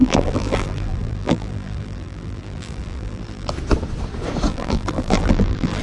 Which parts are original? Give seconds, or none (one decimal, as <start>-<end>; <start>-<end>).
3.5-4.5